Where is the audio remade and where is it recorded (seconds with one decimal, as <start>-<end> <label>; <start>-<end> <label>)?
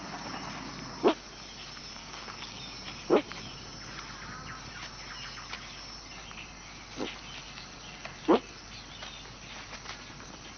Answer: 0.0-2.0 recorded; 2.0-2.6 remade; 2.6-10.6 recorded